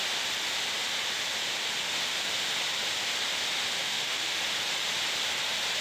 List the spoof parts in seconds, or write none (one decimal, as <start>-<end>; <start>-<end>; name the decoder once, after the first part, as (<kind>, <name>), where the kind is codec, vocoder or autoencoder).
3.8-4.4 (autoencoder, DAC-VAE)